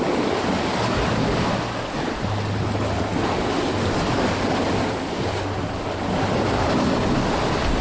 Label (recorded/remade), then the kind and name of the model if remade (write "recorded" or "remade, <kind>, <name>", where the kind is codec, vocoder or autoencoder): recorded